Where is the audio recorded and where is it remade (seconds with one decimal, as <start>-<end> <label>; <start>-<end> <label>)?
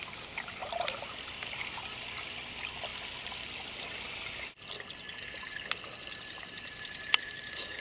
0.0-7.8 recorded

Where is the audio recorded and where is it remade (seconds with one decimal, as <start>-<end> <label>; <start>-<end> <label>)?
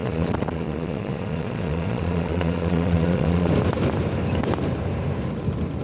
0.0-3.5 remade; 3.5-5.8 recorded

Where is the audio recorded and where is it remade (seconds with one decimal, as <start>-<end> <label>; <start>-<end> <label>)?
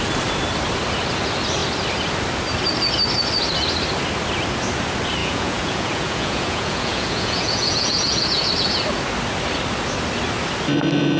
0.0-5.2 recorded; 5.2-8.5 remade; 8.5-11.2 recorded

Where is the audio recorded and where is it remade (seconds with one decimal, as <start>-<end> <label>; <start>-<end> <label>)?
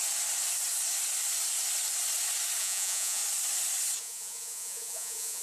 0.0-2.6 recorded; 2.6-3.2 remade; 3.2-4.0 recorded; 4.0-5.4 remade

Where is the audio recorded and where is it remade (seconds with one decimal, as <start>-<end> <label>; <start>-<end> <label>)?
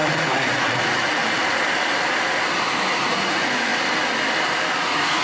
0.0-1.2 remade; 1.2-3.0 recorded; 3.0-3.7 remade; 3.7-4.7 recorded; 4.7-5.2 remade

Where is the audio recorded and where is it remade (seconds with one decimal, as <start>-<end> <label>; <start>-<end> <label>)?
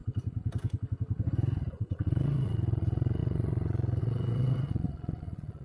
0.0-1.7 recorded; 1.7-5.6 remade